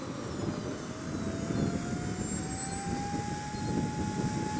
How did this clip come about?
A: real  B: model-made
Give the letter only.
A